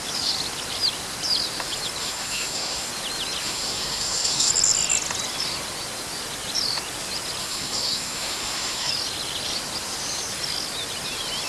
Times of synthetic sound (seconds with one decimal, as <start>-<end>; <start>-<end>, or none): 2.0-2.9; 3.4-4.5; 7.4-8.9